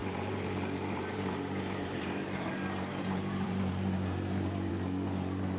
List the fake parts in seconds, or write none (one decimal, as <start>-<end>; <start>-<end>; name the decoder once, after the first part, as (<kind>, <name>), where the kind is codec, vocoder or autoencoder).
0.0-2.5 (vocoder, BigVGAN v2); 2.9-4.7